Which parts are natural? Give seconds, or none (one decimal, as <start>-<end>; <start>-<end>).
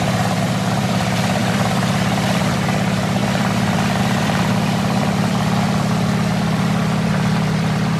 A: none